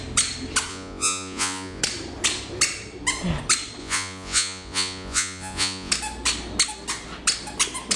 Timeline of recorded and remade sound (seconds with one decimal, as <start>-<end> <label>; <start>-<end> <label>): 0.0-0.7 recorded; 0.7-1.8 remade; 1.8-3.8 recorded; 3.8-5.9 remade; 5.9-8.0 recorded